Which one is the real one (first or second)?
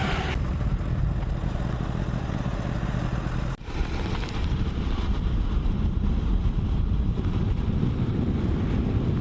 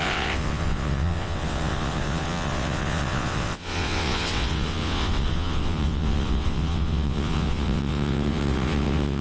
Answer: first